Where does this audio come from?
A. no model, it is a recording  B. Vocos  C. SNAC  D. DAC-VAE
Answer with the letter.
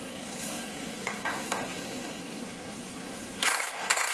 C